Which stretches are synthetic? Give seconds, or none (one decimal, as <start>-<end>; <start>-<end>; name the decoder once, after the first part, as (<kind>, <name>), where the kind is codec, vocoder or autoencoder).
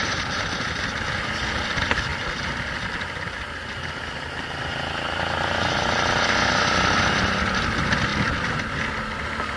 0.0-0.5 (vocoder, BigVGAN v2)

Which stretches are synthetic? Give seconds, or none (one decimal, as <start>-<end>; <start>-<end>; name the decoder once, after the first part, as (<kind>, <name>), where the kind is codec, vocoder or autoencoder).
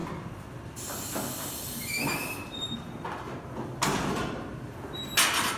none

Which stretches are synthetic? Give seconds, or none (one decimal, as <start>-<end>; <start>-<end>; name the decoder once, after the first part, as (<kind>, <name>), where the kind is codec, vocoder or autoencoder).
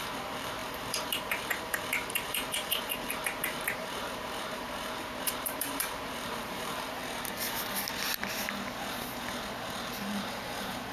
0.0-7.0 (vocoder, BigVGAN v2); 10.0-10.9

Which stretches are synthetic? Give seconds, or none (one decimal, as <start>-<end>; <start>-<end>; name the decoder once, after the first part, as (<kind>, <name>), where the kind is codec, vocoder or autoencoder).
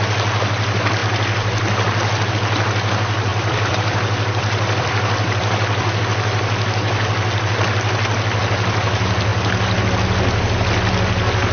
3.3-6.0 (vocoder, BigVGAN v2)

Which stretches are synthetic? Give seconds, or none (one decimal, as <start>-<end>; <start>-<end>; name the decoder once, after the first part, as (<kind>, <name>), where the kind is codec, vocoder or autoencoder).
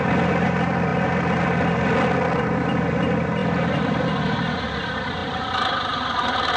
3.4-4.8 (vocoder, BigVGAN v2)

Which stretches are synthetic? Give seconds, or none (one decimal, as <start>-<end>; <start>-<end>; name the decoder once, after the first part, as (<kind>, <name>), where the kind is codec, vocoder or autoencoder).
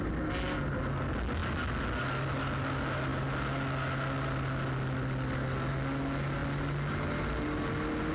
none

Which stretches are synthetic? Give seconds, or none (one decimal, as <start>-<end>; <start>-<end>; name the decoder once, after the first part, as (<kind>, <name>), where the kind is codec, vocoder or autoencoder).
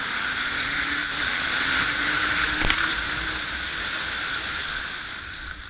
0.0-1.0 (vocoder, BigVGAN v2); 1.8-5.7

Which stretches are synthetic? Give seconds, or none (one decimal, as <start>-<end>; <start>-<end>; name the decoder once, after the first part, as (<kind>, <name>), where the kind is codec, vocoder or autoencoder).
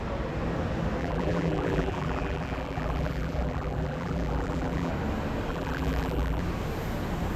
1.0-4.9 (vocoder, BigVGAN v2); 5.5-6.4